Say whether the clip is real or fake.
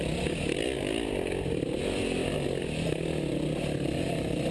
real